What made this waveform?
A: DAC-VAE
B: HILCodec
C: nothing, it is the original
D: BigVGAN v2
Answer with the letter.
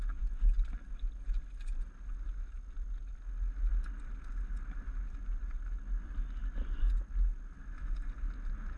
C